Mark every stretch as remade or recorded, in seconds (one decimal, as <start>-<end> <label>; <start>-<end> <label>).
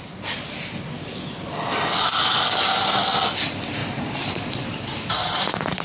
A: 0.0-3.8 recorded; 3.8-5.8 remade